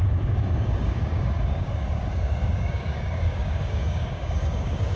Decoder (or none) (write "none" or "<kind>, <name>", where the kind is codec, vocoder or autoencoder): codec, DAC